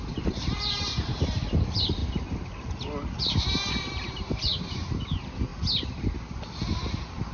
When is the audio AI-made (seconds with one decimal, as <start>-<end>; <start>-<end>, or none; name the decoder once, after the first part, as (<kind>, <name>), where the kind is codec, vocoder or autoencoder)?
0.0-2.0 (vocoder, BigVGAN v2); 3.2-5.5